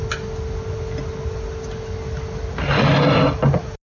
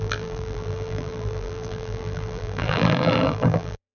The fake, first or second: second